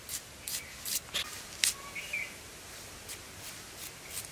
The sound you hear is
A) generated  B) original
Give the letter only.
B